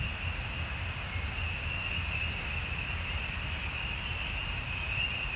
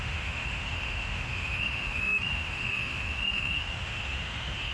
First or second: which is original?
first